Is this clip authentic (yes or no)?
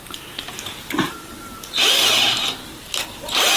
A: yes